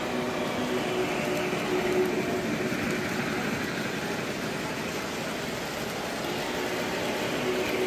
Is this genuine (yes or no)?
yes